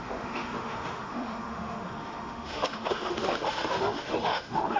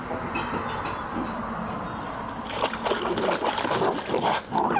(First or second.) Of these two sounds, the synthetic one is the first